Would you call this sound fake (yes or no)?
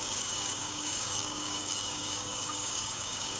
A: yes